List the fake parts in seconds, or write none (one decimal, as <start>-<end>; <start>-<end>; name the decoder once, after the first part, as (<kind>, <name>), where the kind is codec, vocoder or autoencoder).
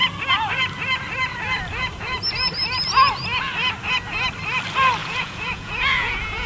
5.0-6.5 (vocoder, Vocos)